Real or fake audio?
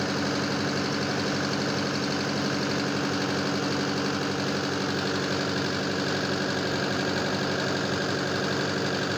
real